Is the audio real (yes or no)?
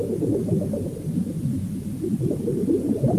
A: no